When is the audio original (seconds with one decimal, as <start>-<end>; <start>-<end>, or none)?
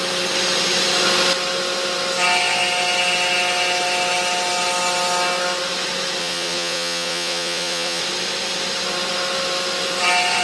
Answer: 0.0-6.2; 8.0-10.4